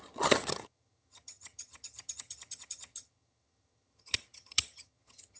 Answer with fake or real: fake